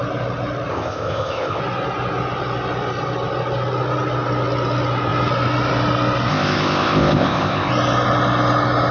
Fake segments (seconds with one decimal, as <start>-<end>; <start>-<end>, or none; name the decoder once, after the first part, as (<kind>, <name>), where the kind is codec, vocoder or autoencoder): 0.7-1.6 (codec, ZipCodec); 6.3-7.7